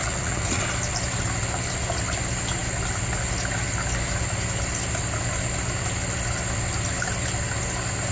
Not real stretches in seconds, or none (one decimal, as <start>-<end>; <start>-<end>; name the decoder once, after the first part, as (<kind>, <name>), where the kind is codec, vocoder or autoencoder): 0.0-0.6 (vocoder, Vocos)